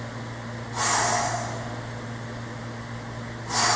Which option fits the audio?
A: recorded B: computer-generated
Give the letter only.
A